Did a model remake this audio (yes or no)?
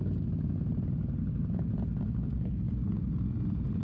no